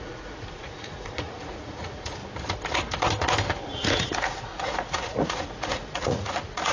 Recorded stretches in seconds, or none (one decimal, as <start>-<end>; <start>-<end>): 2.2-3.6